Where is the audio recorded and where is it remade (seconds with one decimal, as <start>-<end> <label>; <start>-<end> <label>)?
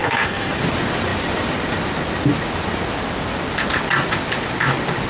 0.0-0.6 remade; 0.6-5.1 recorded